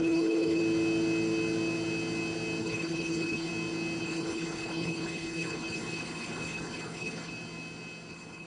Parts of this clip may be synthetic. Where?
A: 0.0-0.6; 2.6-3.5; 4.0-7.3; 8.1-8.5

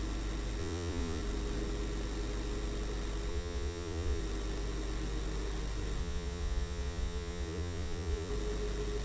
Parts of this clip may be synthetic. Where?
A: 0.6-1.2; 3.3-4.2; 6.0-8.3

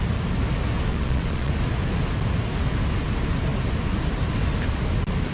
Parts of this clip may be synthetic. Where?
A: 0.9-1.5

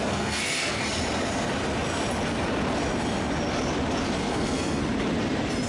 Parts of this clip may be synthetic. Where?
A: 0.0-0.8; 4.2-4.8

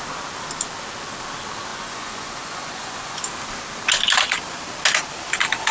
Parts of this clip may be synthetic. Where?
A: 1.7-3.2

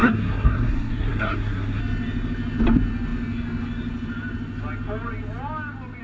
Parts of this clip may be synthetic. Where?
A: 0.0-1.8

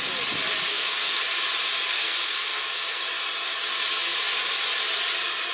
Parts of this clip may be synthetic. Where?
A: 0.7-1.2; 1.9-3.0

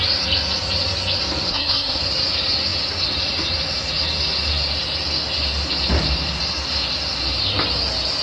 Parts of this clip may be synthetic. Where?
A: 1.5-2.0